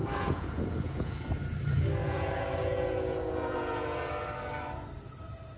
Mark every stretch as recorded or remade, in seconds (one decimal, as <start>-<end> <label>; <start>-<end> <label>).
0.0-1.2 remade; 1.2-2.0 recorded; 2.0-4.1 remade; 4.1-5.6 recorded